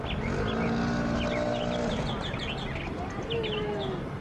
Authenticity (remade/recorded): recorded